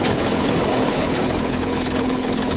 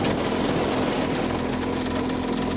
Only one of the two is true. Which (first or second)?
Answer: second